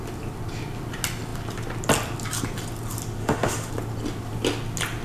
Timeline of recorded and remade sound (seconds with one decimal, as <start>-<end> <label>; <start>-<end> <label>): 0.0-3.2 recorded; 3.2-3.7 remade; 3.7-5.0 recorded